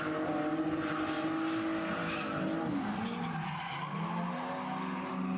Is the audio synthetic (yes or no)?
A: no